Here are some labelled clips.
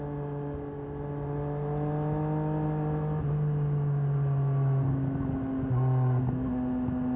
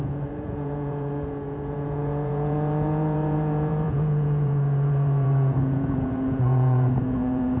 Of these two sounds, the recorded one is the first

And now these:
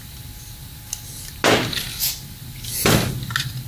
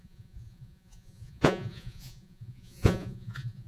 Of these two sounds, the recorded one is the first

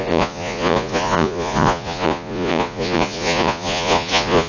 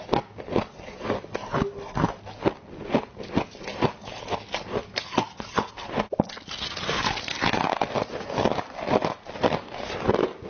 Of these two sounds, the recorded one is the second